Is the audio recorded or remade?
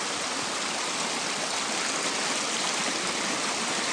recorded